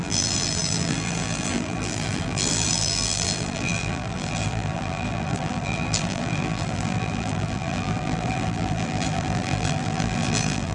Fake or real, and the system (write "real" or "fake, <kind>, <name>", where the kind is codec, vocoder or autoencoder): fake, vocoder, BigVGAN v2